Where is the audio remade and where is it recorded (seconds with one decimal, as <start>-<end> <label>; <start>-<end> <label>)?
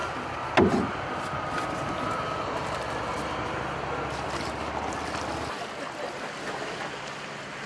0.0-7.7 recorded